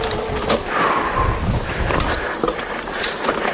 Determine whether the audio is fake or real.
real